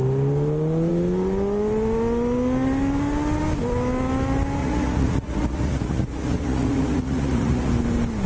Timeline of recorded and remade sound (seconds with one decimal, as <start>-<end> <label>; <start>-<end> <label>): 0.0-4.6 recorded; 4.6-7.7 remade; 7.7-8.3 recorded